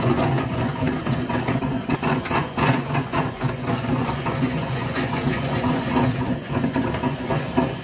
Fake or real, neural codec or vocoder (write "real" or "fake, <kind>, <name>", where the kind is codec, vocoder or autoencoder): fake, vocoder, Vocos